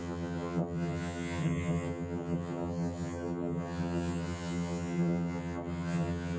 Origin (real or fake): fake